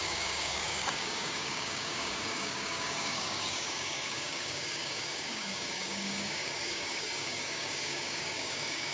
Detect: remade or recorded remade